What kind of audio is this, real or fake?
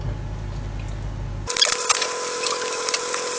real